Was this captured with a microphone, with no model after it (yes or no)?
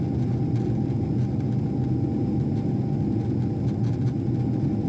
yes